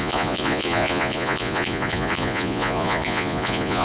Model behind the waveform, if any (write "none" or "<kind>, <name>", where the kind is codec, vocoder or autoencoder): vocoder, Vocos